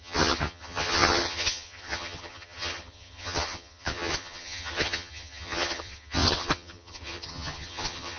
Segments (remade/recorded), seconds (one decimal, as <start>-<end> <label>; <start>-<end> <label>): 0.0-8.2 remade